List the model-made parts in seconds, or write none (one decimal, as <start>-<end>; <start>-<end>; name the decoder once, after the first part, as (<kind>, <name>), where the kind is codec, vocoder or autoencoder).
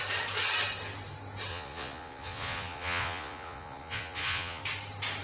1.5-4.6 (vocoder, Vocos)